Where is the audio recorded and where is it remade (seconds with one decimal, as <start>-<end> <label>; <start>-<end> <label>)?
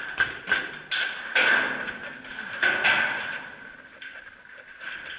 0.0-5.2 recorded